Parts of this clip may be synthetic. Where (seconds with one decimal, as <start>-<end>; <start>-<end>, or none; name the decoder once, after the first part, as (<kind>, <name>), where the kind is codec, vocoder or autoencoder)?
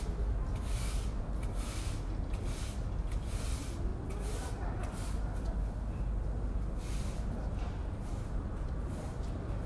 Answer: none